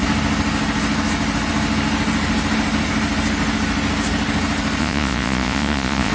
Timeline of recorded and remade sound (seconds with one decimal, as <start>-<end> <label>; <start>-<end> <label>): 0.0-4.8 recorded; 4.8-6.1 remade